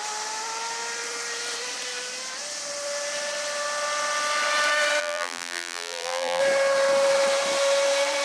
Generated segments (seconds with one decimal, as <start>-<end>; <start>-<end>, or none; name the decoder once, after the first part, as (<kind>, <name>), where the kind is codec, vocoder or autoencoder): 5.0-6.4 (vocoder, BigVGAN v2)